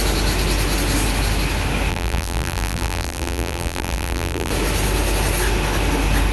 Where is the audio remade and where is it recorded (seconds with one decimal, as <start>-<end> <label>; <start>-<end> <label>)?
0.0-1.9 recorded; 1.9-4.5 remade; 4.5-6.3 recorded